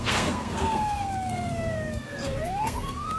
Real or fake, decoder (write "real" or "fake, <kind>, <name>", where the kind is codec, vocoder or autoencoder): fake, codec, SNAC